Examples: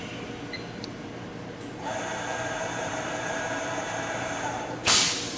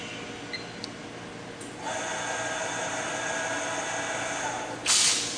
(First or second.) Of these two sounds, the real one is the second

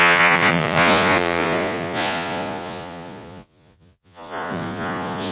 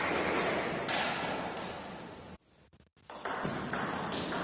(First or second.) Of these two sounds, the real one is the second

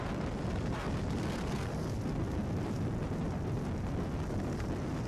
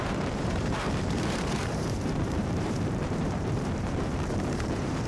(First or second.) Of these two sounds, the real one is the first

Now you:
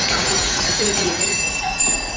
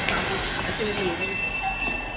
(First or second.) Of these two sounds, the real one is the second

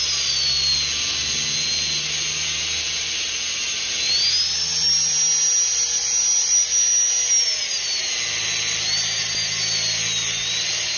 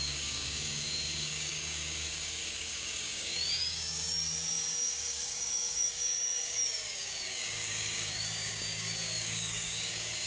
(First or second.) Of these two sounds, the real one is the first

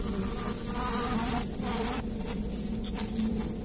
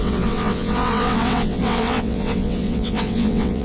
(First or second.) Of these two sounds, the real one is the first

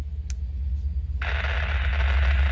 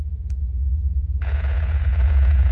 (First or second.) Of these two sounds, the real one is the first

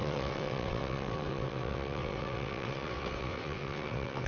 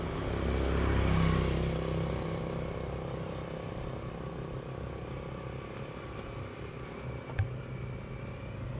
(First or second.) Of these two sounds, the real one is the second